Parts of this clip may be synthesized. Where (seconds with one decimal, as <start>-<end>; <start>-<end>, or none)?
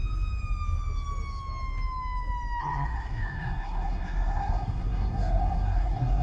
2.6-6.2